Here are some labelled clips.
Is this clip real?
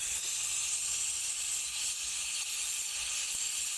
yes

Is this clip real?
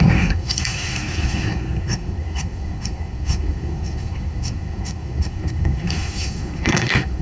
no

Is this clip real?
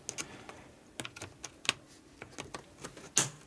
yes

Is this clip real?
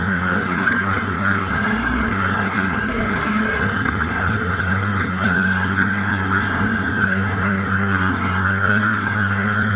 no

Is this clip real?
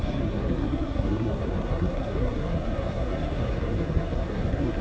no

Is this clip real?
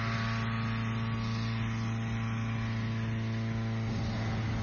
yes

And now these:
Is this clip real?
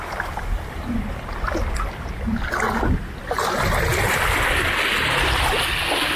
yes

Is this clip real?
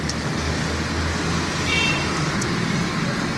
yes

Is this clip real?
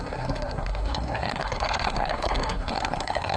no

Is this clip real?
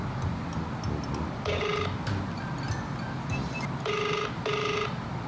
yes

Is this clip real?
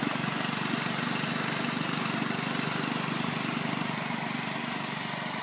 yes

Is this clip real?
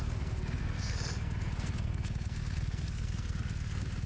no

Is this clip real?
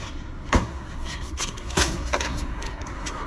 no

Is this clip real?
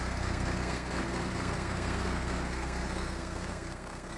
no